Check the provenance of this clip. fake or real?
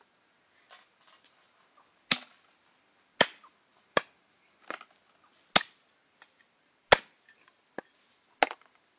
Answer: real